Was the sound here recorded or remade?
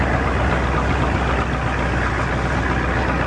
recorded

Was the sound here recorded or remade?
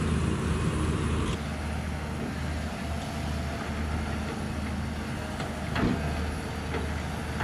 recorded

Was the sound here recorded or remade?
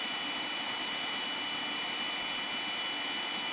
recorded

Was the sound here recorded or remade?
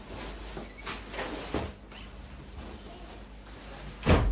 recorded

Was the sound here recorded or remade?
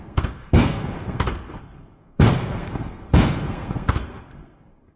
remade